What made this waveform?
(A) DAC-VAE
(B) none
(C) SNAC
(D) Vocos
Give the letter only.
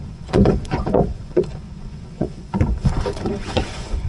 D